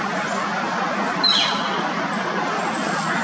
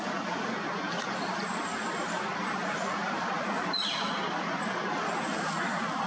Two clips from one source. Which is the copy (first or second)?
second